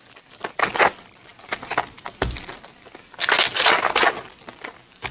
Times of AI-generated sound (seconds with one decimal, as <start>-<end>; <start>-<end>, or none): none